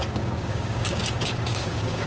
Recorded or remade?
remade